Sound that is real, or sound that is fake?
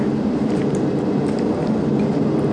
real